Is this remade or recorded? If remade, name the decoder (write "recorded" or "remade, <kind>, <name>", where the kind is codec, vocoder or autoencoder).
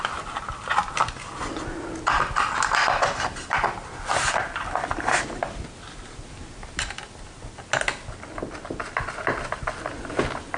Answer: recorded